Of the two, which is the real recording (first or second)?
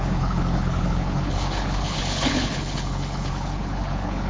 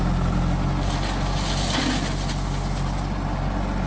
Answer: second